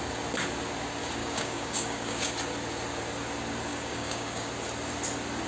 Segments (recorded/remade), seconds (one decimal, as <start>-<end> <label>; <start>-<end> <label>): 0.0-1.2 recorded; 1.2-2.3 remade; 2.3-3.7 recorded; 3.7-4.5 remade; 4.5-5.5 recorded